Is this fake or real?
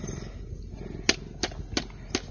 real